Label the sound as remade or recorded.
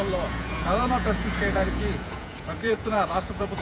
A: remade